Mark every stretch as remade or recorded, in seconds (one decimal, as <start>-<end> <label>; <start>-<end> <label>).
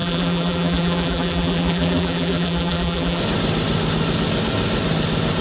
0.0-3.2 remade; 3.2-5.4 recorded